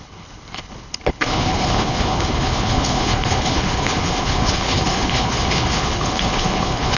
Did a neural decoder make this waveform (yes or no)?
yes